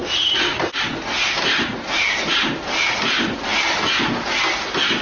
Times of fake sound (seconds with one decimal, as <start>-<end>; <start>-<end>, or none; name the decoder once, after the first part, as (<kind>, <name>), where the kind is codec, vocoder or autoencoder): none